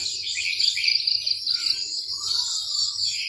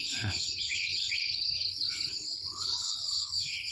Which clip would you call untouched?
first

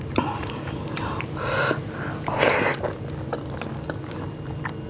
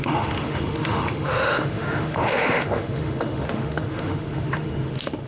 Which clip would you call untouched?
first